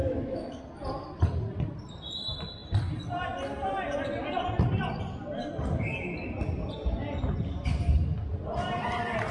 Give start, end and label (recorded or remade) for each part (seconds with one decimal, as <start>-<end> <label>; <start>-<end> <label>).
0.0-0.6 remade; 0.6-9.3 recorded

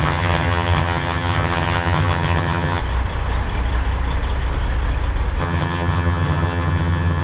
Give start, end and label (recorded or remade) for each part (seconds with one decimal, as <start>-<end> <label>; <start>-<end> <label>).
0.0-2.8 remade; 2.8-5.4 recorded; 5.4-7.2 remade

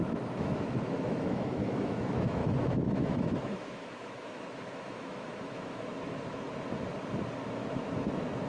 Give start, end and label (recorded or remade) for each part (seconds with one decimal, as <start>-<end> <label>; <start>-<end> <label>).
0.0-5.9 remade; 5.9-8.5 recorded

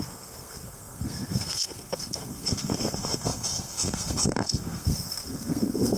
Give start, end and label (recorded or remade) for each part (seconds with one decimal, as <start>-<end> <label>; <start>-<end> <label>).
0.0-6.0 remade

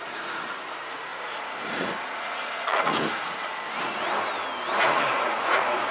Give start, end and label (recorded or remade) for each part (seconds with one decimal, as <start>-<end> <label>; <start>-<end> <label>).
0.0-3.4 remade; 3.4-4.8 recorded; 4.8-5.9 remade

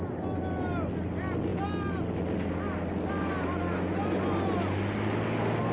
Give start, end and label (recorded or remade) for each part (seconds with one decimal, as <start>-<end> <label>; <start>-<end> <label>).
0.0-5.7 recorded

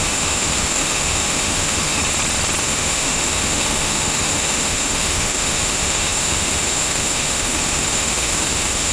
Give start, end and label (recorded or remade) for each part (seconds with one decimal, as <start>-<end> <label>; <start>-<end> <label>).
0.0-2.0 remade; 2.0-2.6 recorded; 2.6-8.9 remade